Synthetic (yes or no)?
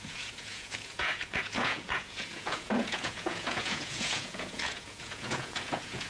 yes